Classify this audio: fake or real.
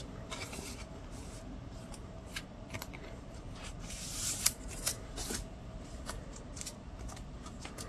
fake